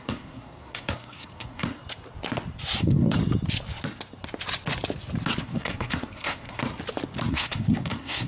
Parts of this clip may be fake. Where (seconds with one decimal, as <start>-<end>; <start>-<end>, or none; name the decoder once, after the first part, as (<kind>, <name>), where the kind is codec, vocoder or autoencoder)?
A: 0.0-1.8 (codec, SNAC); 2.8-3.2; 5.4-6.6; 7.3-8.3